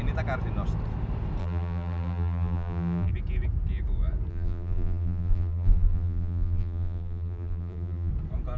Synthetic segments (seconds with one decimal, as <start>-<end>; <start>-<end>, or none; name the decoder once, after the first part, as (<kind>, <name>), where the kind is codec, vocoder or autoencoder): 1.4-3.1 (vocoder, BigVGAN v2); 4.3-8.1